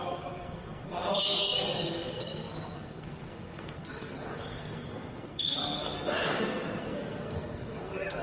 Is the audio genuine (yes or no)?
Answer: no